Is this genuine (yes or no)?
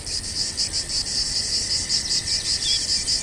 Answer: yes